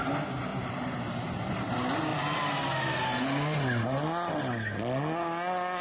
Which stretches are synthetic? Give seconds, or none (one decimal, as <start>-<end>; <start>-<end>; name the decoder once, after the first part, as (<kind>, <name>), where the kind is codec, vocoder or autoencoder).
0.5-1.7 (vocoder, BigVGAN v2); 2.1-2.7